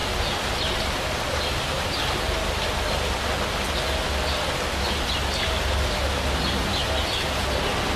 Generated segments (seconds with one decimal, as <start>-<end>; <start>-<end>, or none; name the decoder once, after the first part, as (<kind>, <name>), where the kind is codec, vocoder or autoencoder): none